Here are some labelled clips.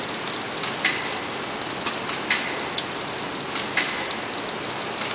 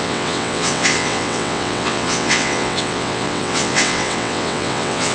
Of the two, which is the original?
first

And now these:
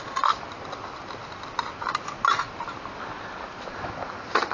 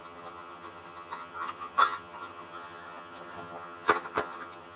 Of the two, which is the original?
first